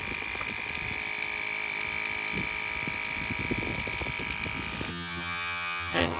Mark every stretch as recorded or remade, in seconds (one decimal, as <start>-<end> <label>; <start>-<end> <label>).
0.0-4.9 recorded; 4.9-6.2 remade